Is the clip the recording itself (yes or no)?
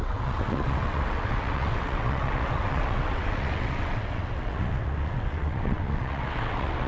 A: no